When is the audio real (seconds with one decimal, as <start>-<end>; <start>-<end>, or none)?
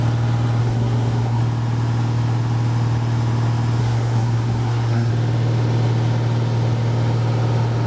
0.0-0.6; 1.4-3.8; 5.1-7.9